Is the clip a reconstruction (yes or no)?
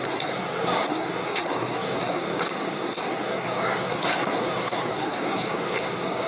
yes